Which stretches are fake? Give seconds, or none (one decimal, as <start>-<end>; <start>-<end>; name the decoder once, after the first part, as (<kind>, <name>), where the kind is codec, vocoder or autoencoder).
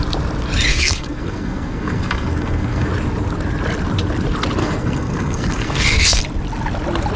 0.7-2.9 (codec, SNAC); 4.6-6.2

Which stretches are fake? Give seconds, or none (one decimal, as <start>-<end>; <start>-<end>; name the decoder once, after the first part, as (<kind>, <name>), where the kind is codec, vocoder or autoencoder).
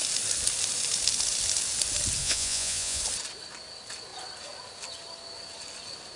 2.2-3.0 (vocoder, Vocos)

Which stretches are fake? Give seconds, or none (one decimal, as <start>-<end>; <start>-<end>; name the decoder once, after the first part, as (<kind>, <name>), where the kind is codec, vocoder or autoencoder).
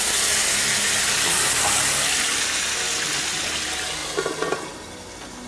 none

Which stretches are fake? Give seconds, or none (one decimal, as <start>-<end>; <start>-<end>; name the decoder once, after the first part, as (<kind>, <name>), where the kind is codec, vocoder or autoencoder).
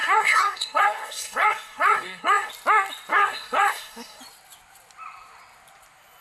0.0-2.5 (codec, SNAC); 3.1-4.2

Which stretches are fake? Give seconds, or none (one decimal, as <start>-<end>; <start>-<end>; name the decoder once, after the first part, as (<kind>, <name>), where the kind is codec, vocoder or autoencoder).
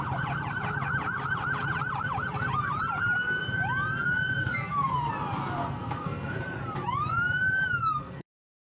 4.4-5.1 (codec, SNAC); 5.6-6.4; 7.8-8.7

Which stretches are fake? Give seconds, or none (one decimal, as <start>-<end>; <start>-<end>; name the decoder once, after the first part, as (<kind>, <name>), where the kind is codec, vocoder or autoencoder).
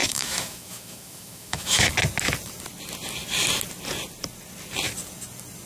0.0-1.9 (autoencoder, DAC-VAE)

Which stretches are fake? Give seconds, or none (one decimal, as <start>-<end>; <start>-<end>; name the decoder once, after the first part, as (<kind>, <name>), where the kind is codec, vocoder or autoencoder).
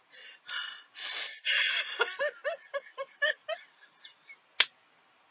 none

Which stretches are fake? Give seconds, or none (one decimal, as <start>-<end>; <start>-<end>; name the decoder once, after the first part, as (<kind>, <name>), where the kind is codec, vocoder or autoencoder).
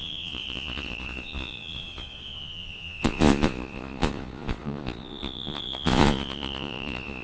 0.0-7.2 (vocoder, Vocos)